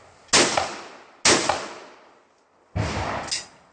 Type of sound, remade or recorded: recorded